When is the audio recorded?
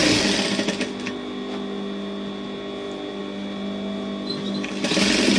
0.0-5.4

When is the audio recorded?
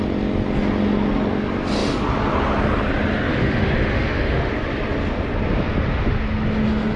0.0-3.3; 4.5-7.0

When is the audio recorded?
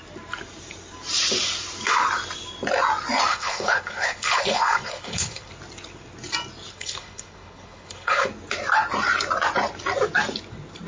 0.0-3.3; 5.5-6.7; 8.3-10.9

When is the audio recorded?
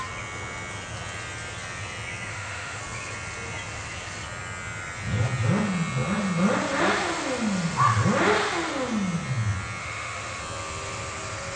0.0-2.3; 2.8-9.8; 10.4-11.6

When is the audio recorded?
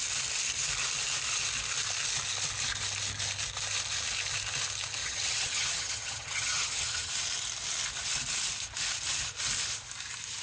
0.0-5.0; 7.1-10.4